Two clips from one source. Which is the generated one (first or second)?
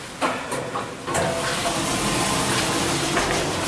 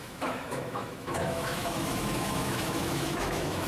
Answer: second